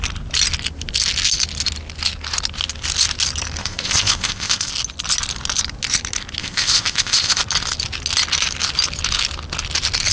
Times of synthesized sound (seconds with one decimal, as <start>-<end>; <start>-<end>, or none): 3.6-4.7; 6.4-7.4